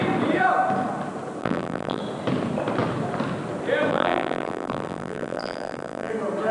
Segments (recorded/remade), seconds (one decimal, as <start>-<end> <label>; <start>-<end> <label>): 0.0-1.4 recorded; 1.4-2.0 remade; 2.0-3.9 recorded; 3.9-6.1 remade; 6.1-6.5 recorded